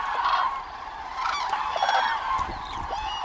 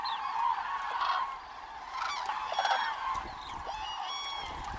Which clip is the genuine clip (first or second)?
second